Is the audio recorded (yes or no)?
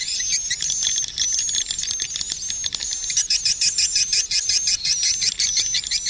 yes